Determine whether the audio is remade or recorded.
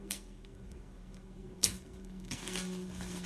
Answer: remade